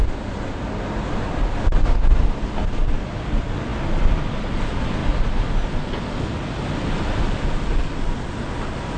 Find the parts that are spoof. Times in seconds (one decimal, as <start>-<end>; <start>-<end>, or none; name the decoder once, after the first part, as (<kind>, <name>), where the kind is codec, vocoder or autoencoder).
none